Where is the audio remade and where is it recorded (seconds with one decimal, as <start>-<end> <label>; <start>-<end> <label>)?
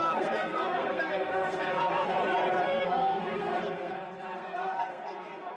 0.0-2.2 remade; 2.2-2.8 recorded; 2.8-5.6 remade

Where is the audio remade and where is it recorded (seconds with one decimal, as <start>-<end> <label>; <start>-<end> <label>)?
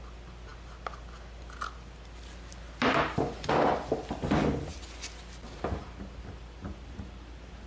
0.0-7.7 recorded